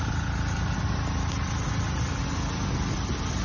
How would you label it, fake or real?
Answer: real